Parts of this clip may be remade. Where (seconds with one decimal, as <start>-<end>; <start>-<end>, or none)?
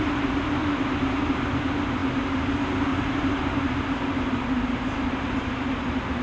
0.6-1.4; 2.9-5.7